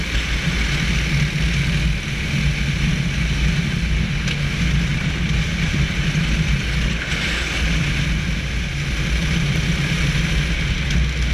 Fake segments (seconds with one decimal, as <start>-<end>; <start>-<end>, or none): 4.9-7.1; 9.2-10.6